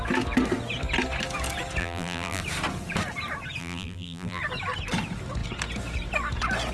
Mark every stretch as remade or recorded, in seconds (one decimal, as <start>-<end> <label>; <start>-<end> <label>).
0.0-1.8 recorded; 1.8-2.4 remade; 2.4-3.6 recorded; 3.6-4.4 remade; 4.4-6.7 recorded